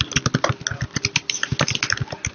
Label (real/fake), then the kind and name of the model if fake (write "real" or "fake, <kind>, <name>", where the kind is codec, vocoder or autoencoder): real